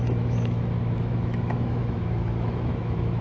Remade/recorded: remade